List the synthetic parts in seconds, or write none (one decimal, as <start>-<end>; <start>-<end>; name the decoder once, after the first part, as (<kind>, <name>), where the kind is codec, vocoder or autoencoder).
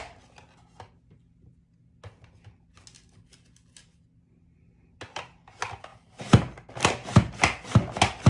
none